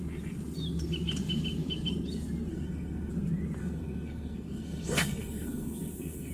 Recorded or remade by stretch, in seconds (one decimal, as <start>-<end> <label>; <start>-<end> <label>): 0.0-2.5 recorded; 2.5-3.1 remade; 3.1-3.6 recorded; 3.6-6.3 remade